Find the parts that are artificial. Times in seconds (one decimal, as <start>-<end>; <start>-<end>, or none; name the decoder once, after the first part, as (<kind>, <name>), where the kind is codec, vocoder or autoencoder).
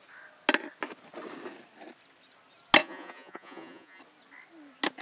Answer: 2.8-4.0 (vocoder, Vocos)